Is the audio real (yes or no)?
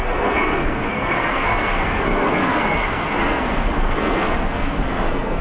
no